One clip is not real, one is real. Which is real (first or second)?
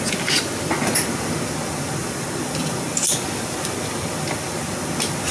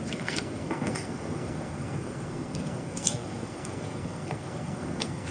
first